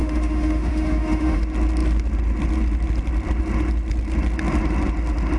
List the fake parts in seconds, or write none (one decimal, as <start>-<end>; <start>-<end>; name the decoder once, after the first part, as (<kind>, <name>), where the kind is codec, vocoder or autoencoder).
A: 0.0-1.4 (autoencoder, DAC-VAE)